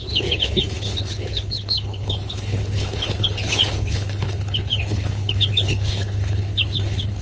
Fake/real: fake